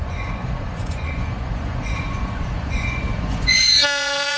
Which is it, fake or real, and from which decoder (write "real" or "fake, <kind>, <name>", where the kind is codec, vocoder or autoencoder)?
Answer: fake, vocoder, Vocos